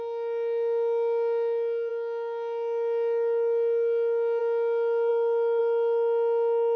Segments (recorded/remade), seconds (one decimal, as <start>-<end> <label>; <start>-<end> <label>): 0.0-6.8 recorded